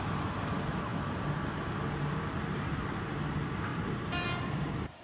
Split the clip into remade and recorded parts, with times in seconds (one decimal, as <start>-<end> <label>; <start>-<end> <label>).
0.0-3.7 recorded; 3.7-5.0 remade